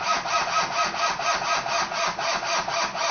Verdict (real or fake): real